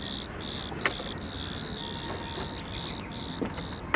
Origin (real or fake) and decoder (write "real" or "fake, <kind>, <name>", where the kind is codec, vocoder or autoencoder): real